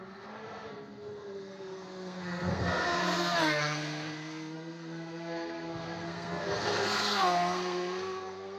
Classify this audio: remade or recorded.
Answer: remade